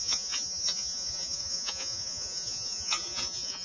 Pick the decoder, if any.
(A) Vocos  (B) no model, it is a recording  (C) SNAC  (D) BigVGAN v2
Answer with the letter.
A